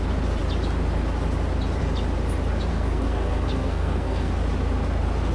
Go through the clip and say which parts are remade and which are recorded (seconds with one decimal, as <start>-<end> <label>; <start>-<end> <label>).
0.0-2.7 recorded; 2.7-4.3 remade; 4.3-5.3 recorded

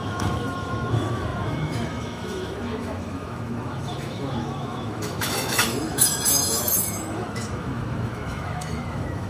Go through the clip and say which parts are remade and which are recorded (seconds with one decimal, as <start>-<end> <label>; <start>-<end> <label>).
0.0-9.3 remade

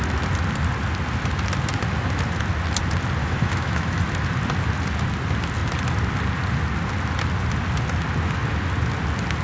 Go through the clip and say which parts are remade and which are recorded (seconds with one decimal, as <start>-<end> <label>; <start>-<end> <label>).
0.0-3.2 recorded; 3.2-4.0 remade; 4.0-9.4 recorded